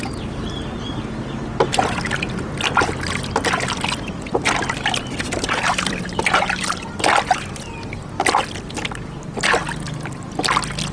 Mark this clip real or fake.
real